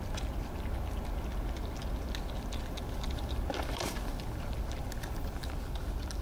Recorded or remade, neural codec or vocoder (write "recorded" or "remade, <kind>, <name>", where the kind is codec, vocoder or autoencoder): recorded